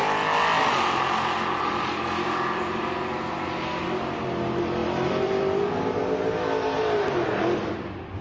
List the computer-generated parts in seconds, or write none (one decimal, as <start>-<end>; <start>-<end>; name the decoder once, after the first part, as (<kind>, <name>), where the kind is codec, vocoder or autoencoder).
4.8-5.4 (vocoder, BigVGAN v2)